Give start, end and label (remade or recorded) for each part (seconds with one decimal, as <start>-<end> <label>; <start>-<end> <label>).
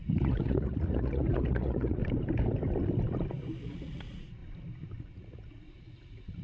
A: 0.0-2.0 remade; 2.0-3.6 recorded; 3.6-4.4 remade; 4.4-5.0 recorded; 5.0-6.4 remade